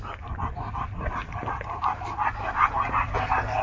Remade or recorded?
recorded